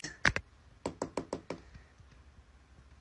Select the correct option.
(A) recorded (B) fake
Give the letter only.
A